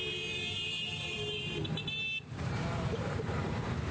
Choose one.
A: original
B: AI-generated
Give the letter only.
B